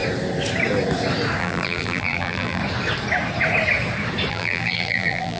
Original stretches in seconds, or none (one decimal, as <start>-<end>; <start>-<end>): 0.0-1.4; 2.6-4.3